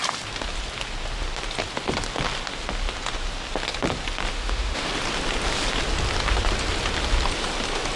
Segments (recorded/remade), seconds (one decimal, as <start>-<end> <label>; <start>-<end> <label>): 0.0-4.3 recorded; 4.3-4.9 remade; 4.9-8.0 recorded